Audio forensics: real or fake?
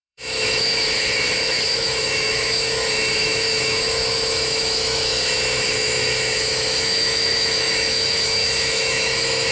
fake